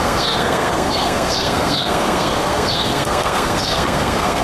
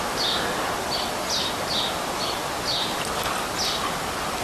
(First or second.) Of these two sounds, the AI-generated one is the first